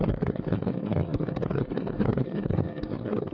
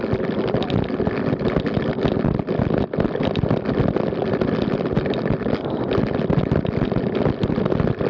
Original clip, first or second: second